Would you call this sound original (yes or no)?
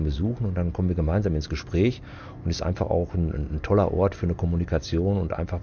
yes